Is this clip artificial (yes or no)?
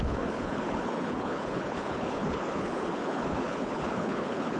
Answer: yes